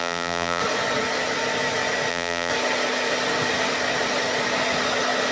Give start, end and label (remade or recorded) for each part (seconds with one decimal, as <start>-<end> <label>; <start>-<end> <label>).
0.0-0.6 remade; 0.6-2.1 recorded; 2.1-2.5 remade; 2.5-5.3 recorded